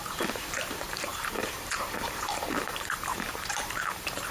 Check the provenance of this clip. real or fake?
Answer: fake